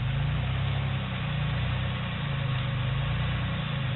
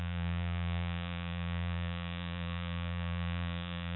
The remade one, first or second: second